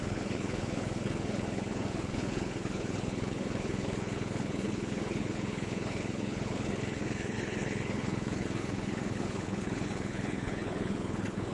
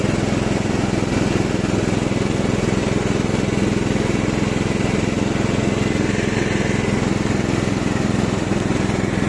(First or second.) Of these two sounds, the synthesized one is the first